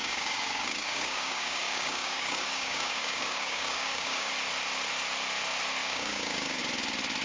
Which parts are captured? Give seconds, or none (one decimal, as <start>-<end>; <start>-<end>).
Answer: 4.3-5.8; 6.6-7.2